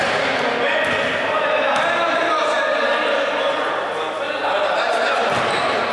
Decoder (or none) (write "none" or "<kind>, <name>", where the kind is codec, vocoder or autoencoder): none